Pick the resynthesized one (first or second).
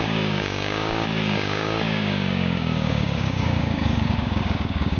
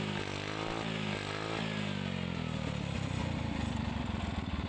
first